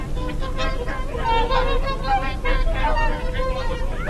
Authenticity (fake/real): real